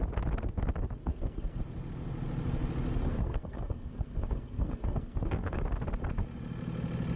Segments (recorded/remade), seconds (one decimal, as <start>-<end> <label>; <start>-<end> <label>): 0.0-1.0 recorded; 1.0-1.6 remade; 1.6-3.1 recorded; 3.1-5.6 remade; 5.6-7.2 recorded